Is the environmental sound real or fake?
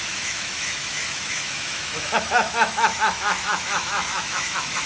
fake